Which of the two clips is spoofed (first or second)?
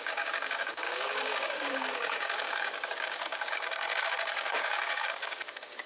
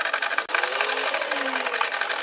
first